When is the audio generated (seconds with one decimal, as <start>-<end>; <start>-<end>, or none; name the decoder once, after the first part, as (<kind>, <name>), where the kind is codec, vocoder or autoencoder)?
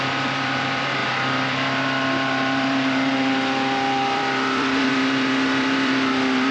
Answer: 0.0-6.5 (vocoder, BigVGAN v2)